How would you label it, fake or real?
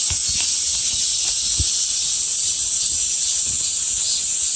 real